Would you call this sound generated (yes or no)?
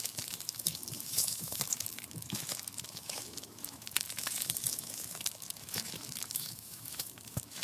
yes